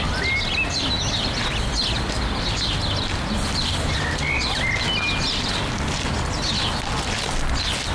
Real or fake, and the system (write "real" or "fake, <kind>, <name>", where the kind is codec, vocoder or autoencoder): real